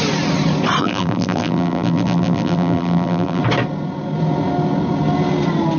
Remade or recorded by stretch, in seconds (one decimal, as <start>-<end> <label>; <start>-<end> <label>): 0.0-0.8 recorded; 0.8-3.4 remade; 3.4-5.8 recorded